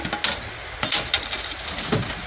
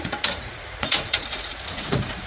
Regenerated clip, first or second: second